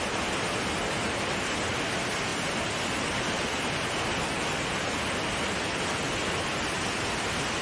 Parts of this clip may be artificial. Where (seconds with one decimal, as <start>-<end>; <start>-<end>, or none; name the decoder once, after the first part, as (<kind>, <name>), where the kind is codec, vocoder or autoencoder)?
none